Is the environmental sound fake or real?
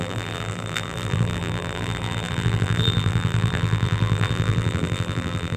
fake